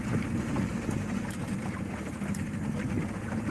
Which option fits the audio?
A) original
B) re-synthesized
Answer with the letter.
A